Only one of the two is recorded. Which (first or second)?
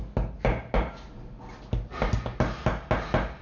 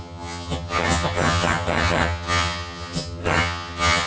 first